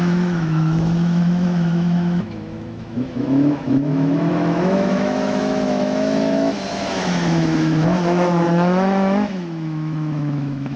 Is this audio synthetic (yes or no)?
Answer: yes